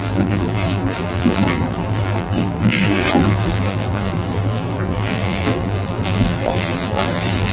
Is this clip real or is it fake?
fake